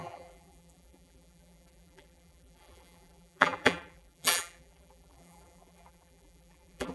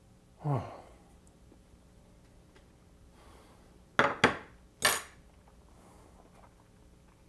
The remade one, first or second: first